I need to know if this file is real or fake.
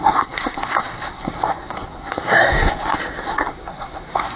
fake